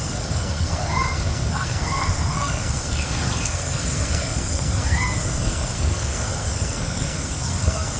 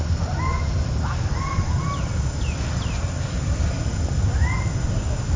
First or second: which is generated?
first